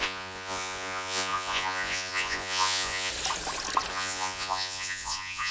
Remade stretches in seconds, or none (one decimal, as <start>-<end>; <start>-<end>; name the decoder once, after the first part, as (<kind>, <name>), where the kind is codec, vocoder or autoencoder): 0.0-3.1 (vocoder, Vocos); 3.9-5.5